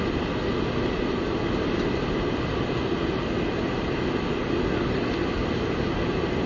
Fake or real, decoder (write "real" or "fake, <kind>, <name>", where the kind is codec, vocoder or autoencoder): real